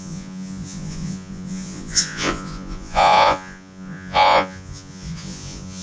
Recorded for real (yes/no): no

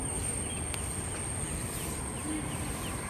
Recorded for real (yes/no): yes